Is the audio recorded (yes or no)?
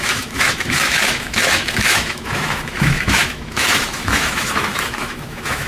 no